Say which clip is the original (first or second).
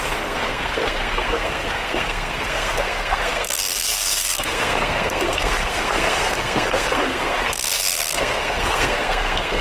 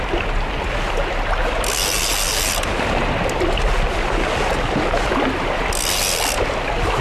second